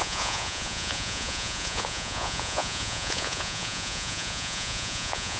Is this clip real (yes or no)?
no